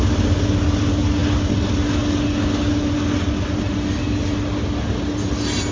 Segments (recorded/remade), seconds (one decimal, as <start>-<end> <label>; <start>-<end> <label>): 0.0-5.7 recorded